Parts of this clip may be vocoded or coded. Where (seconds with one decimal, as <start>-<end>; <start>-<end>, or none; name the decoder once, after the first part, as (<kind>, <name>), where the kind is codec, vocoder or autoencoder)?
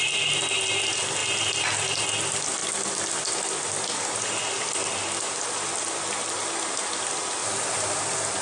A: none